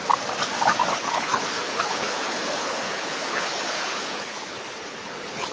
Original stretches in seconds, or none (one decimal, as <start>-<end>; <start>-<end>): 0.0-0.9